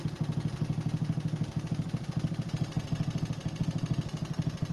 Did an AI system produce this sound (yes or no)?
no